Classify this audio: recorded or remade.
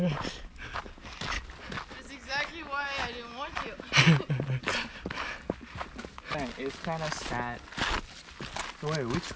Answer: recorded